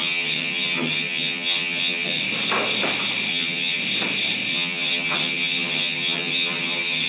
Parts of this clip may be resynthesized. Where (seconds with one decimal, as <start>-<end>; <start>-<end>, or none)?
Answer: 0.0-2.2; 3.3-3.8; 4.5-7.1